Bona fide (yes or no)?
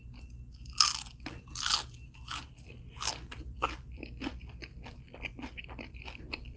yes